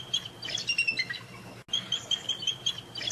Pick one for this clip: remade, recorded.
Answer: recorded